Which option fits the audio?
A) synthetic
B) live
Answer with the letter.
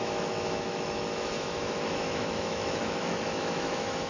A